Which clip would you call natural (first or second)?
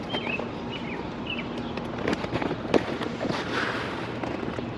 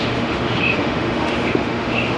first